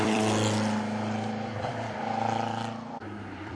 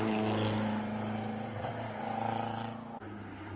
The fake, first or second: first